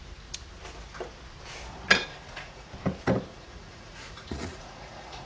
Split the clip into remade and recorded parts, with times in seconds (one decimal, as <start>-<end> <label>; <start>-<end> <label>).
0.0-2.1 recorded; 2.1-2.7 remade; 2.7-3.3 recorded; 3.3-5.3 remade